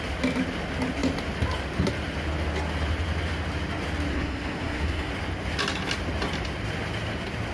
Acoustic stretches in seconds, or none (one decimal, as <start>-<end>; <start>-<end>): 0.0-4.1; 5.1-7.5